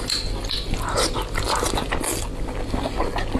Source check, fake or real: real